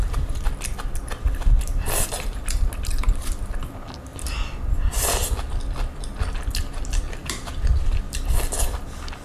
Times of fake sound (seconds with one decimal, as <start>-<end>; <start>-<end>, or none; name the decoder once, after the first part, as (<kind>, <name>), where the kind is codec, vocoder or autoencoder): 7.2-8.2 (vocoder, BigVGAN v2)